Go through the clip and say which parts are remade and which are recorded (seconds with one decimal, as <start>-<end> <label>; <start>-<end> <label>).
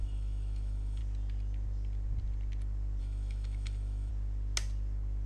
0.0-1.0 remade; 1.0-3.0 recorded; 3.0-4.1 remade; 4.1-5.3 recorded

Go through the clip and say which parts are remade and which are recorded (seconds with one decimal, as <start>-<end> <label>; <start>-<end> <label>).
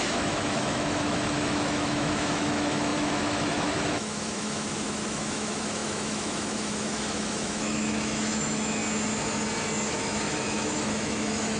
0.0-8.8 remade; 8.8-9.9 recorded; 9.9-11.6 remade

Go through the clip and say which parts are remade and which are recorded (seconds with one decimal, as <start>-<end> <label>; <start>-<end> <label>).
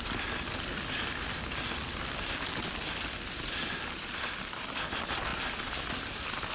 0.0-6.5 recorded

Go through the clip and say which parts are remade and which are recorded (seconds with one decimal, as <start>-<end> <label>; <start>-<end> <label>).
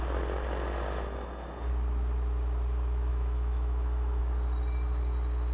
0.0-3.1 recorded; 3.1-4.2 remade; 4.2-5.5 recorded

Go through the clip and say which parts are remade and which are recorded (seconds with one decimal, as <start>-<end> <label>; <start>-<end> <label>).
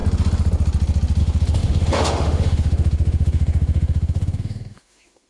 0.0-1.2 recorded; 1.2-5.3 remade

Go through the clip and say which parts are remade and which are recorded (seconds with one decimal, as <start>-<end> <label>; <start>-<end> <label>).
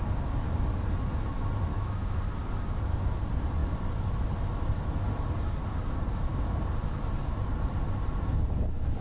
0.0-1.7 recorded; 1.7-2.2 remade; 2.2-9.0 recorded